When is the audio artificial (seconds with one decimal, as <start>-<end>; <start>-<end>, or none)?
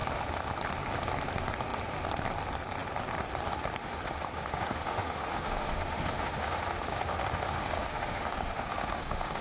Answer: 3.8-9.4